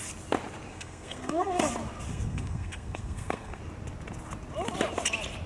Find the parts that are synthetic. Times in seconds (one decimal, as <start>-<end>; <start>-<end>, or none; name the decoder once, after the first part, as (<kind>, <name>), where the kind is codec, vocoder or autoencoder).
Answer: 0.7-1.7 (codec, SNAC); 2.1-3.6